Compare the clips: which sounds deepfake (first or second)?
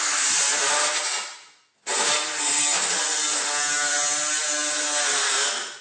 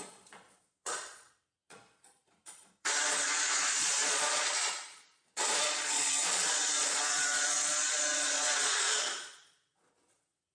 second